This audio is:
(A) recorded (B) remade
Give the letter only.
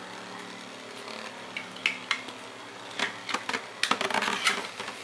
A